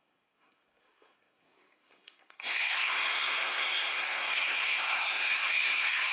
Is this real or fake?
fake